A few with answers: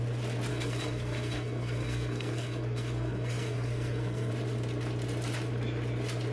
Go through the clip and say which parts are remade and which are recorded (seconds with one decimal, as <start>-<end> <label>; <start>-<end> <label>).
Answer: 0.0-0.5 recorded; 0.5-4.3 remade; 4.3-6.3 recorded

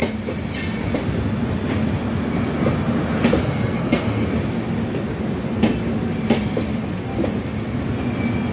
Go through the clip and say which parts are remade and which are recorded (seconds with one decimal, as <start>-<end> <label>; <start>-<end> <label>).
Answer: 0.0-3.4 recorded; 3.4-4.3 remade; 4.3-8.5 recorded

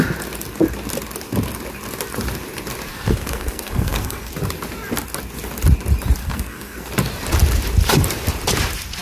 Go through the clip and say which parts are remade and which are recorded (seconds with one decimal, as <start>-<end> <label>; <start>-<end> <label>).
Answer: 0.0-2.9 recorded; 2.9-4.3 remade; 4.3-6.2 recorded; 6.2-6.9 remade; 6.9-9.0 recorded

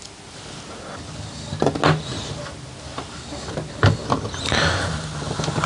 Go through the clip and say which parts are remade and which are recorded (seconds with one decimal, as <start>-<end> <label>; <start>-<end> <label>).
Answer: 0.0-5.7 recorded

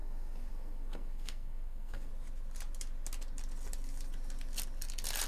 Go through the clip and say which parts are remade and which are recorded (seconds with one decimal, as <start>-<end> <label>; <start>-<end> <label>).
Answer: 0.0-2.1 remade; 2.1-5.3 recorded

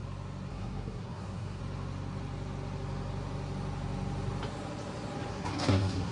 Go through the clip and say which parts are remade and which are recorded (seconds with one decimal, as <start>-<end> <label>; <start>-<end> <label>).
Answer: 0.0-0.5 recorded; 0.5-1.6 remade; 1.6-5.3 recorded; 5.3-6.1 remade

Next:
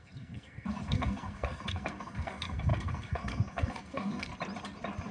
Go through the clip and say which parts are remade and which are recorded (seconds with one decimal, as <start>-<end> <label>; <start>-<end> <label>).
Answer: 0.0-4.3 remade; 4.3-5.1 recorded